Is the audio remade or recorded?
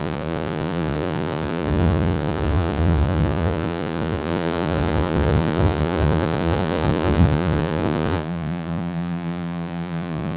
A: remade